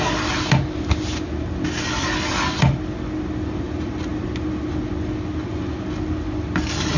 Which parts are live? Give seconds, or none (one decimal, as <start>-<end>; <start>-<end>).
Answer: 0.0-7.0